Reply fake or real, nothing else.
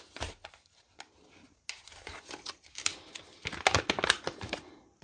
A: real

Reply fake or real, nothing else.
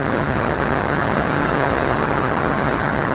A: fake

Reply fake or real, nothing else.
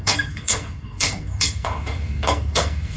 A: fake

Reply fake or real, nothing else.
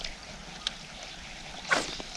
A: real